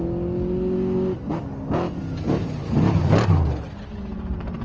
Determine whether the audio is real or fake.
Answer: real